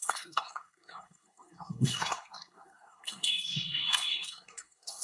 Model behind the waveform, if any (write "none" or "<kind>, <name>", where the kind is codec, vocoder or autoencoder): codec, SNAC